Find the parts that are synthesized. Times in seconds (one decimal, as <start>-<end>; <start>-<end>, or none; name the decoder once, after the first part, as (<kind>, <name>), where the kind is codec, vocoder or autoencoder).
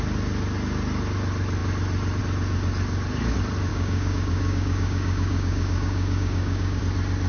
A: 3.7-6.8 (codec, DAC)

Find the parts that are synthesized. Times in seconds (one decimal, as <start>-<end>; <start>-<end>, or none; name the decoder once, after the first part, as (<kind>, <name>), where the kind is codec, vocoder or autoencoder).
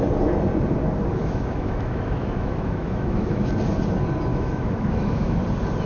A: 1.2-3.5 (autoencoder, DAC-VAE); 4.3-5.4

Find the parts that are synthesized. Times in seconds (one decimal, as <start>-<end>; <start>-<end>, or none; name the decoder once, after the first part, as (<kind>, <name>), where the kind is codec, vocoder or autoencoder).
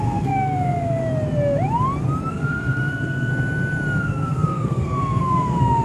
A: 0.0-1.0 (codec, SNAC); 2.3-3.3; 4.0-5.8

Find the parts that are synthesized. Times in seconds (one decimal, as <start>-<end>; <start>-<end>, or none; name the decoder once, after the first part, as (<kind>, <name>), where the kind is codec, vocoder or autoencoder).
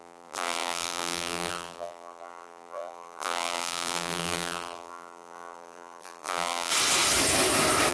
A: 0.0-6.7 (vocoder, BigVGAN v2)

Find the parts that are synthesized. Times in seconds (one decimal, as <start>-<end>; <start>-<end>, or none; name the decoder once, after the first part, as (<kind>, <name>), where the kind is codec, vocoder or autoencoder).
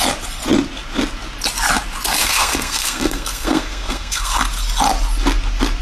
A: 2.2-4.4 (codec, SNAC)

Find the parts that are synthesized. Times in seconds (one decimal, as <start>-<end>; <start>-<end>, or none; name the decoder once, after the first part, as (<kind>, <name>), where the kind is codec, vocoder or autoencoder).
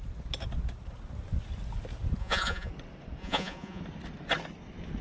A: 2.2-2.7 (vocoder, Vocos); 3.2-3.8